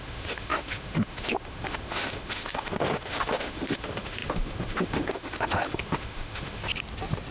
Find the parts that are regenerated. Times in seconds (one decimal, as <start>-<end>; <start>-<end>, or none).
0.0-6.6